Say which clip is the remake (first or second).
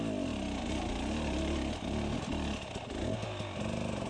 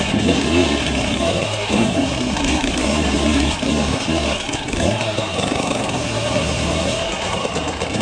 second